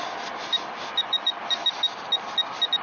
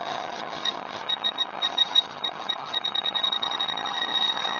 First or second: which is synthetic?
second